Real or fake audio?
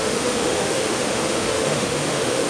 fake